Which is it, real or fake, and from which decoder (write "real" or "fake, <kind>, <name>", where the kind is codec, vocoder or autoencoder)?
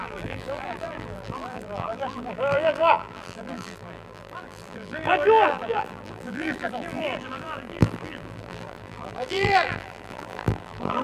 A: fake, vocoder, BigVGAN v2